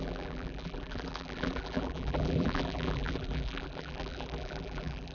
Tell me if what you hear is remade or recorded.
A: remade